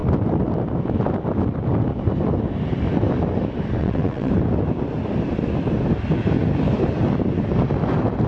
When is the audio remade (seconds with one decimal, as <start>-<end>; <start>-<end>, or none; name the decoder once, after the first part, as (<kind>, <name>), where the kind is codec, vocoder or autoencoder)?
3.8-4.3 (vocoder, WaveNeXt)